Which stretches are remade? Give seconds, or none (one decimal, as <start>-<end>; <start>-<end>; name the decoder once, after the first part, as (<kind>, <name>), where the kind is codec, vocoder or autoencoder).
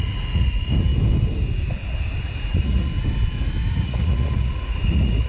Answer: 0.0-0.9 (vocoder, Vocos); 2.2-2.9; 3.7-5.3